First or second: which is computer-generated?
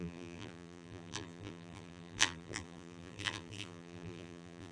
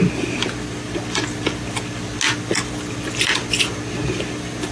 first